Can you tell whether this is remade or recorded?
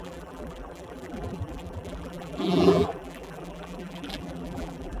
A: remade